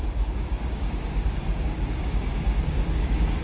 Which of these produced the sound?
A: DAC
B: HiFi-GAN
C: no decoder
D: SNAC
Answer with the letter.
A